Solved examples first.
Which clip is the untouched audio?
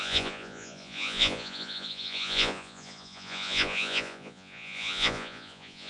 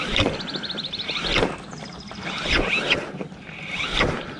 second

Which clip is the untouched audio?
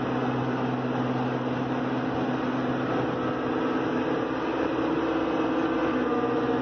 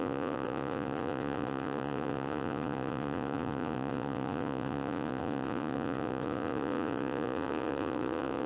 first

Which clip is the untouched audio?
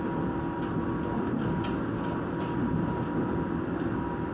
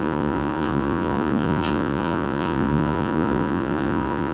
first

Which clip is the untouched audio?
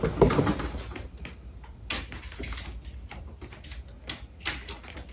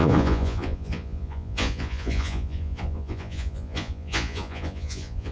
first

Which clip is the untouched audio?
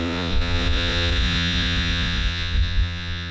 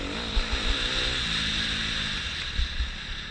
second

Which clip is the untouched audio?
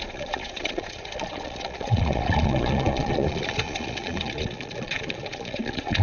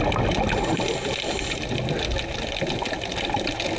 second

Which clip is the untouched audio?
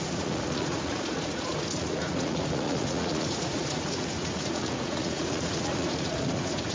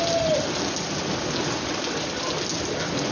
second